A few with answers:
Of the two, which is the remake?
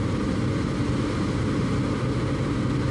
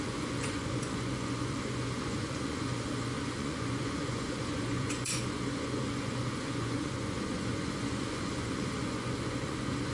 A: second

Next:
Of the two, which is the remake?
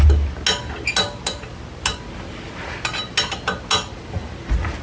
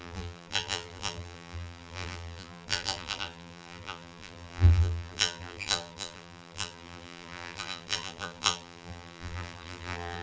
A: second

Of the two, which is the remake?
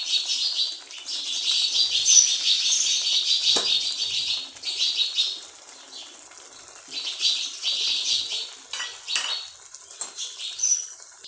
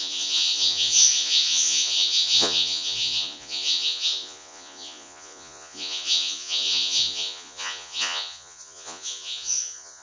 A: second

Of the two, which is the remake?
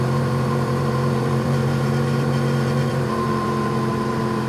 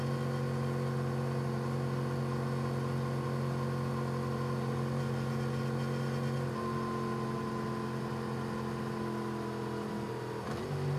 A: first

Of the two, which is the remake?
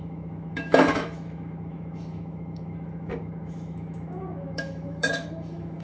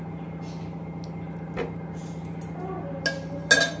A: first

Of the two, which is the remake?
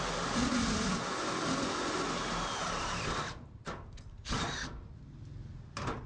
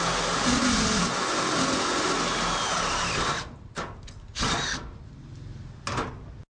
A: first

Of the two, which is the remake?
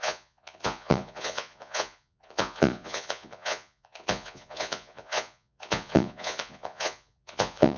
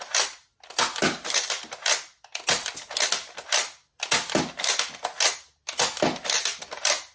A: first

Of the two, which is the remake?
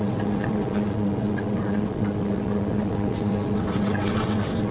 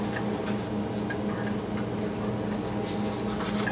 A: first